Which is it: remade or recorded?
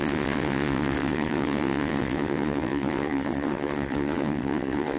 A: remade